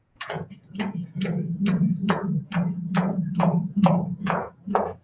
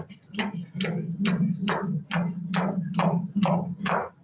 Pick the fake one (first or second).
first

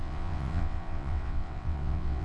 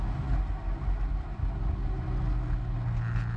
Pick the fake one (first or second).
first